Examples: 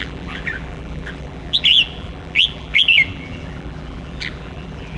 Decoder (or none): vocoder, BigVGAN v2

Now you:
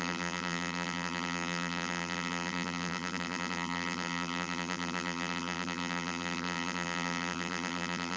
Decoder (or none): vocoder, BigVGAN v2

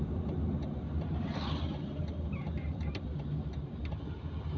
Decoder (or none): none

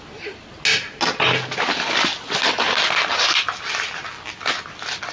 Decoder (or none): none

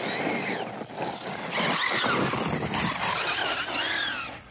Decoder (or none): none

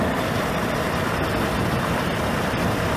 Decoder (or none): none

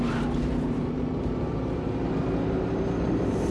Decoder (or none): vocoder, BigVGAN v2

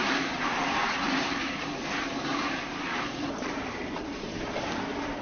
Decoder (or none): vocoder, BigVGAN v2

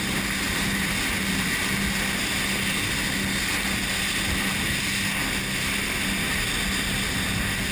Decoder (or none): none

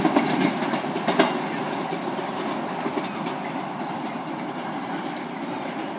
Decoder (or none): none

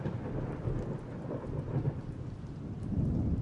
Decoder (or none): none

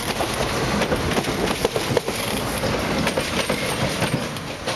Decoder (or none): none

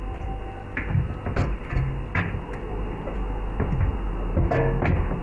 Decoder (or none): none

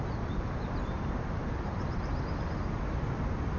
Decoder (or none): none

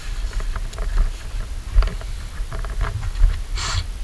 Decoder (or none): none